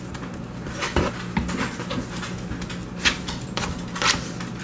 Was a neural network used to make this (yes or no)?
no